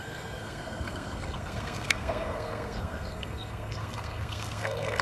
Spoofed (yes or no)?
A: yes